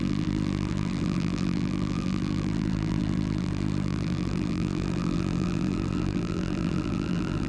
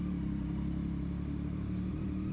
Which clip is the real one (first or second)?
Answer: second